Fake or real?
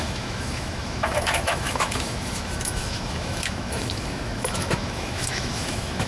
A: fake